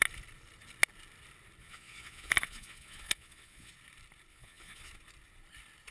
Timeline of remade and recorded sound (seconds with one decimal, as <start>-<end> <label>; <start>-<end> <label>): 0.0-1.6 recorded; 1.6-3.7 remade; 3.7-4.3 recorded; 4.3-4.9 remade; 4.9-5.9 recorded